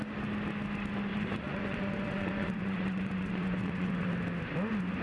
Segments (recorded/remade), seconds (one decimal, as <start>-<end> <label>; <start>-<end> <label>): 0.0-1.1 recorded; 1.1-4.1 remade; 4.1-5.0 recorded